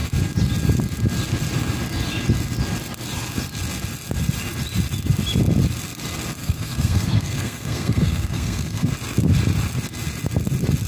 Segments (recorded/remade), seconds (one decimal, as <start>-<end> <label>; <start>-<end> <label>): 0.0-6.4 recorded; 6.4-8.9 remade; 8.9-10.9 recorded